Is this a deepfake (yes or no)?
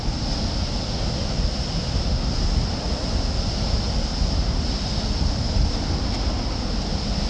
no